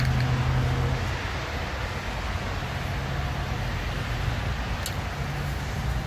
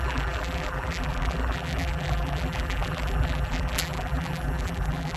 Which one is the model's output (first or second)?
second